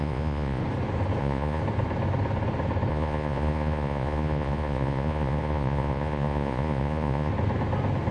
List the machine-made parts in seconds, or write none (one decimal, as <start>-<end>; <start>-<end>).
0.0-0.6; 1.2-1.6; 2.9-7.3